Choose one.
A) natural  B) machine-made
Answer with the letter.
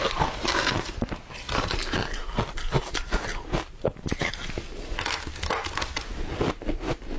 A